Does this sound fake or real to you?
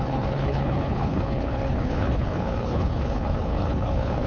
fake